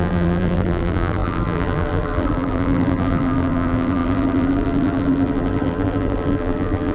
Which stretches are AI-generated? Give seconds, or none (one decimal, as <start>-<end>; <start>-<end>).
0.0-6.9